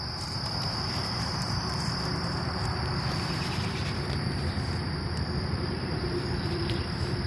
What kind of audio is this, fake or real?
fake